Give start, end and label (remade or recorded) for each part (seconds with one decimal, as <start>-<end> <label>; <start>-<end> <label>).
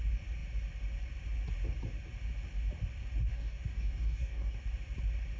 0.0-3.3 recorded; 3.3-4.6 remade; 4.6-5.4 recorded